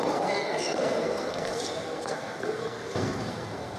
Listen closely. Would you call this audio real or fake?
fake